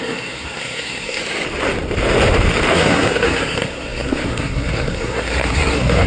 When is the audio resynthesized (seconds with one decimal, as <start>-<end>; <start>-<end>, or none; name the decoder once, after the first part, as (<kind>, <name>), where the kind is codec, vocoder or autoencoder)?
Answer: 0.0-1.2 (codec, SNAC); 2.7-6.1